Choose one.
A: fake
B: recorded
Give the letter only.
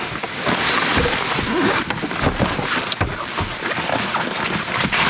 B